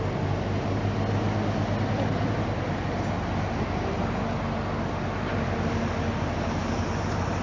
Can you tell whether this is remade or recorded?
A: recorded